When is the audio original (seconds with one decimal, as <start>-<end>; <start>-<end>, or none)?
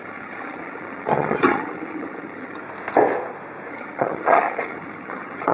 2.6-3.7